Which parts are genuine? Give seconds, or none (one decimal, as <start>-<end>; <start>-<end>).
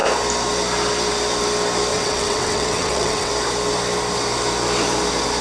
0.0-1.9; 3.3-5.4